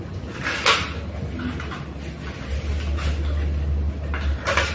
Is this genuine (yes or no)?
yes